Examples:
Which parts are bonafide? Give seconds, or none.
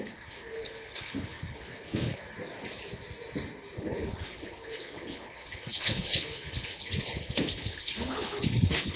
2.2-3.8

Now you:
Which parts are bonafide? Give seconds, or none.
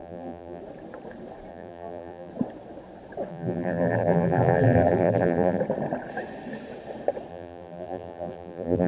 0.6-1.5; 2.3-3.3; 5.6-7.3